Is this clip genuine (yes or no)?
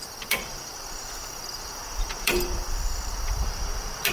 no